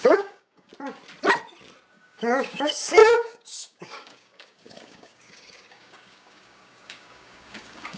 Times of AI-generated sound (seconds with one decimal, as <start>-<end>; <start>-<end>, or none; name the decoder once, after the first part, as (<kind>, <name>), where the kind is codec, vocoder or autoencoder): 0.0-0.7 (codec, DAC); 1.9-8.0